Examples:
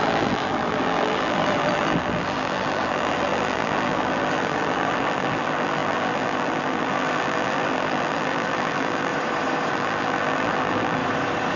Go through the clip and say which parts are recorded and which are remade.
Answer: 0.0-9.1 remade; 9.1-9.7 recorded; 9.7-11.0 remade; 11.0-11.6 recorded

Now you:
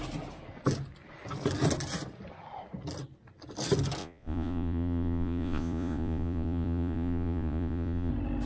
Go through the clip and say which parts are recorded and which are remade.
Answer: 0.0-4.0 recorded; 4.0-8.1 remade; 8.1-8.5 recorded

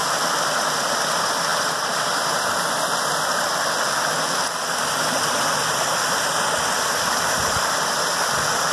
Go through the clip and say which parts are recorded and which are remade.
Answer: 0.0-8.7 recorded

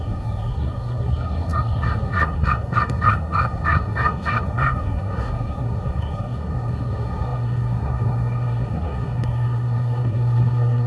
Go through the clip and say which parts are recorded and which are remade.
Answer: 0.0-10.9 remade

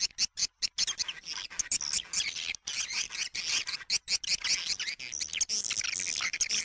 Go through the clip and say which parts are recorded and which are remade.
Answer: 0.0-6.6 recorded

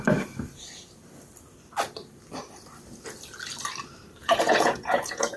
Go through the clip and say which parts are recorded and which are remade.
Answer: 0.0-4.2 recorded; 4.2-5.4 remade